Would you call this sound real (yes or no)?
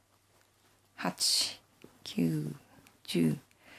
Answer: yes